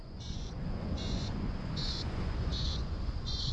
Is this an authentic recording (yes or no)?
no